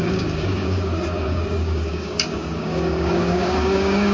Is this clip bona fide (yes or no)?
no